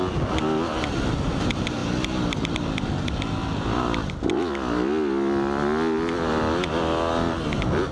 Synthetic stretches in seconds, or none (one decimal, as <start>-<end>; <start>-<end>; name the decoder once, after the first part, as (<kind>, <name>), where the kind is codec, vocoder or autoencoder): none